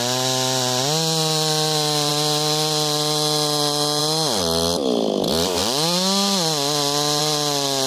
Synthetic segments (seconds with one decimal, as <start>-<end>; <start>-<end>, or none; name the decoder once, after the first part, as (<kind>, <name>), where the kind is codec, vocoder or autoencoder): none